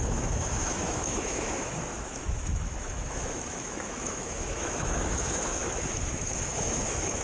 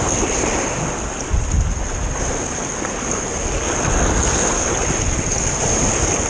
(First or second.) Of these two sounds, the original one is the second